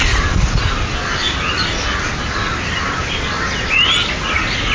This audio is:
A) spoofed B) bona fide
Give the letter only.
B